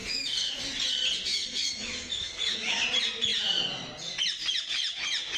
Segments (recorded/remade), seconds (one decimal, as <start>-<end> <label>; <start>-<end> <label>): 0.0-0.6 remade; 0.6-1.3 recorded; 1.3-2.8 remade; 2.8-5.4 recorded